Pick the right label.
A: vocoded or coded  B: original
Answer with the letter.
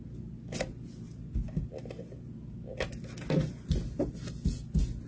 B